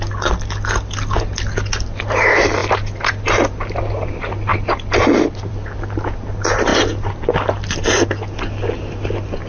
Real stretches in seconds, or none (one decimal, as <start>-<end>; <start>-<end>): 0.0-9.5

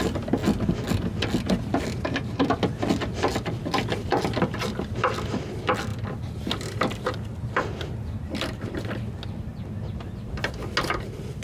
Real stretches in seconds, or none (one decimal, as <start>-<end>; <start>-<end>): 0.4-2.9; 5.9-10.9